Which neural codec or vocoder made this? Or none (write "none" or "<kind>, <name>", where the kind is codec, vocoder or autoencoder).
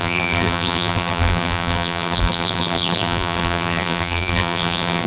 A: vocoder, BigVGAN v2